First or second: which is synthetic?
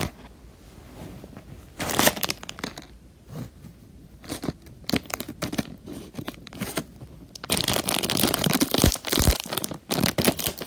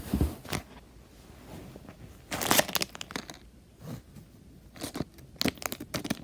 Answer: first